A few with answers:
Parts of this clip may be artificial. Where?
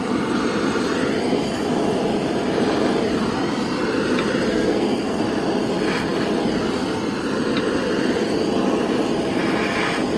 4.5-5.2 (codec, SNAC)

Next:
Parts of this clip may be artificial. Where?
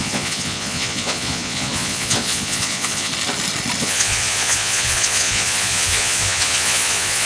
0.0-3.1 (vocoder, Vocos); 3.8-7.3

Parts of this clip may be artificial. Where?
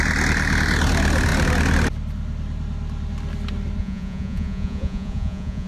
3.8-5.7 (vocoder, Vocos)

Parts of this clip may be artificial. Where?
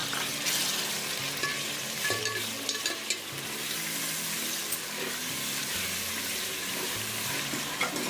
1.5-2.2 (vocoder, BigVGAN v2); 5.2-6.1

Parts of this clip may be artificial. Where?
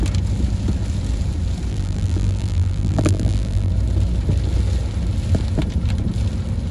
1.7-3.7 (vocoder, BigVGAN v2)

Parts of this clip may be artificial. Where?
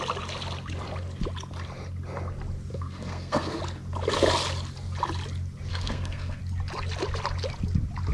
2.7-3.6 (codec, SNAC); 5.7-6.4